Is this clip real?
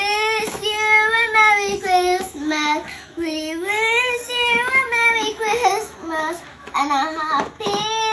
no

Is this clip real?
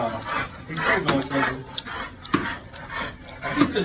yes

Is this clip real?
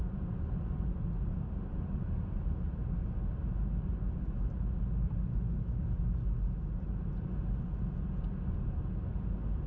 yes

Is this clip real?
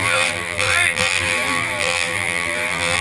no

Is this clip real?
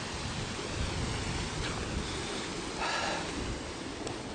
yes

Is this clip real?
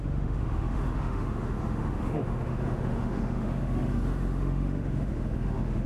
no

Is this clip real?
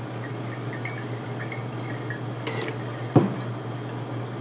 yes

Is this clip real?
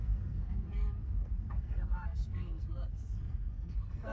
no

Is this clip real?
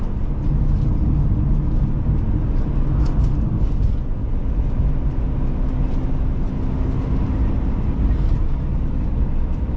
yes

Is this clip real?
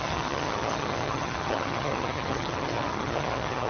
no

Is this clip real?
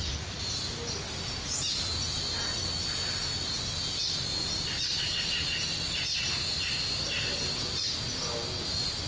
yes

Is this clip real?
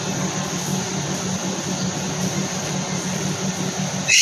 no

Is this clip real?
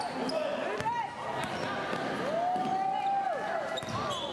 yes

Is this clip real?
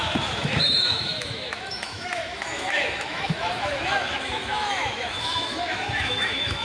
no